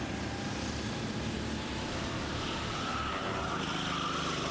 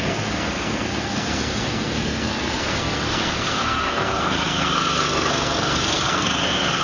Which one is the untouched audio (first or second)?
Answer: first